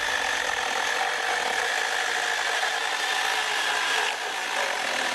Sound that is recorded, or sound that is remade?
recorded